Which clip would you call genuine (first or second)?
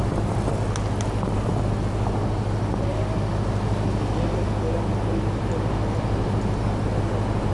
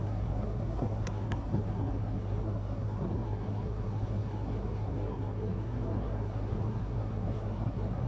first